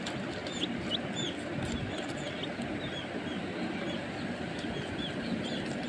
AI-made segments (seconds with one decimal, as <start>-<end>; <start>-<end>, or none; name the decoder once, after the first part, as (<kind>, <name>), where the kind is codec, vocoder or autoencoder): 0.0-0.4 (vocoder, BigVGAN v2); 3.9-5.9